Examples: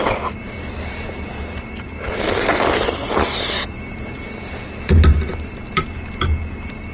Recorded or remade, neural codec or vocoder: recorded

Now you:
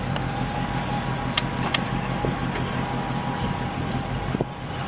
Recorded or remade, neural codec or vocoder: recorded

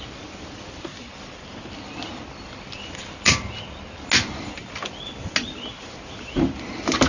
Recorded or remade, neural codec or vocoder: recorded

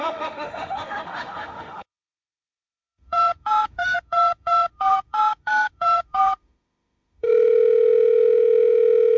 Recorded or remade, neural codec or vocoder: remade, autoencoder, DAC-VAE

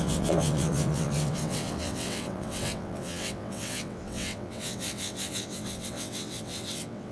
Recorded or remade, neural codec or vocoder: remade, vocoder, WaveNeXt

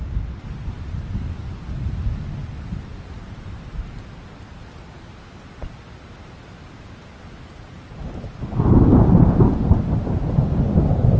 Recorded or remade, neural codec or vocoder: recorded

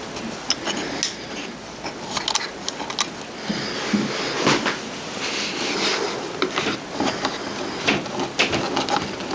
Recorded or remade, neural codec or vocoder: recorded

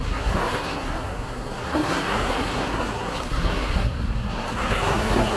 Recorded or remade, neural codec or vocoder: remade, codec, SNAC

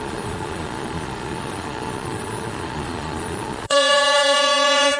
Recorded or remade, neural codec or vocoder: remade, vocoder, Vocos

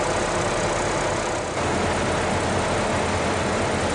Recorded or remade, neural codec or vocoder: recorded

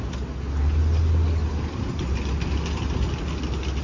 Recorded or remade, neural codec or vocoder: recorded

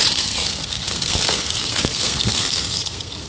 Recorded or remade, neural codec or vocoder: remade, codec, SNAC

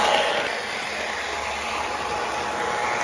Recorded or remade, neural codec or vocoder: recorded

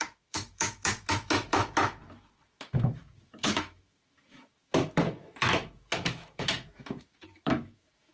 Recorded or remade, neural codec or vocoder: remade, autoencoder, DAC-VAE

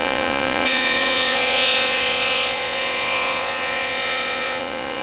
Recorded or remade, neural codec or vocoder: remade, vocoder, Vocos